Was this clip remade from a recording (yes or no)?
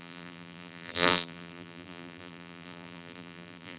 yes